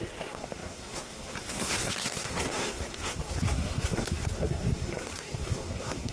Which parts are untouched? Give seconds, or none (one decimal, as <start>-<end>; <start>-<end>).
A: none